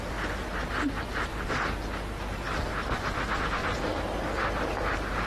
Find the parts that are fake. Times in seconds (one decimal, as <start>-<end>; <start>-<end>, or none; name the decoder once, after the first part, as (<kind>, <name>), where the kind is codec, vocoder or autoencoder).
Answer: none